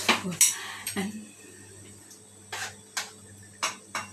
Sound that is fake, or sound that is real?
real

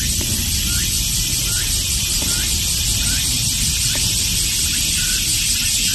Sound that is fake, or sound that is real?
real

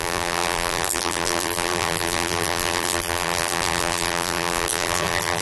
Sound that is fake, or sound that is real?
fake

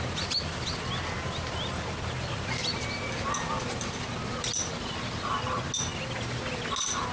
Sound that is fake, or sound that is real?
real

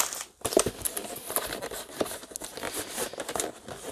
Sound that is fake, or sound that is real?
real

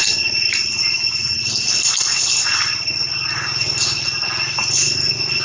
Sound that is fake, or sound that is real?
real